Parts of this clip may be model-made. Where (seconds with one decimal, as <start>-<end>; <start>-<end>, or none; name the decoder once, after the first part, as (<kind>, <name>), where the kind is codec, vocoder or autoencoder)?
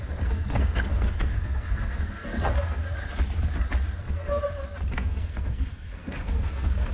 0.0-2.8 (codec, SNAC); 4.0-4.4; 4.9-6.9